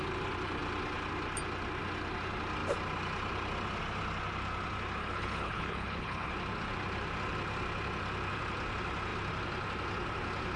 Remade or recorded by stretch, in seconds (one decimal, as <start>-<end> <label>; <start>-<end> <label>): 0.0-5.0 recorded; 5.0-6.3 remade; 6.3-10.6 recorded